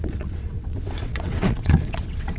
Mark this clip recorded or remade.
remade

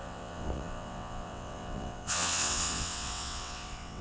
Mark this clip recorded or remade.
remade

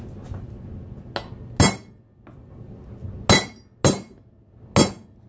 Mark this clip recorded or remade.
recorded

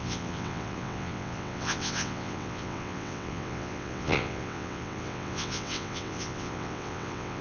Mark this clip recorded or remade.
remade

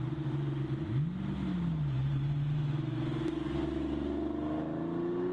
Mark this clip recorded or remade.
recorded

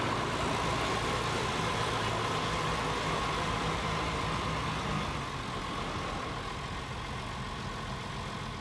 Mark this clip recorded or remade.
recorded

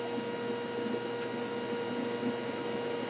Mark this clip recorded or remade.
recorded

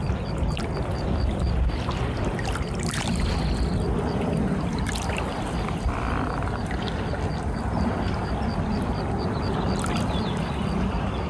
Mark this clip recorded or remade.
recorded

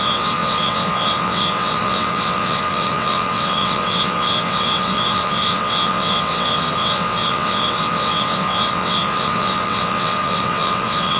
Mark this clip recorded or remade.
remade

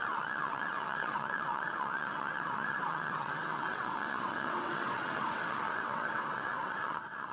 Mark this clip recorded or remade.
remade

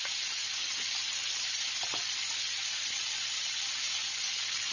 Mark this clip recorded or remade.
recorded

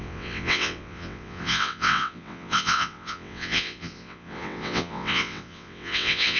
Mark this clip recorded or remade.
remade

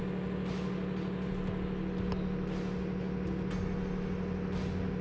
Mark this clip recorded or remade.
recorded